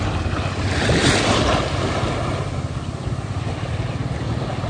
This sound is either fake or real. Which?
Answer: real